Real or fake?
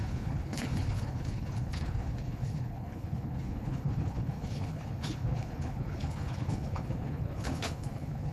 fake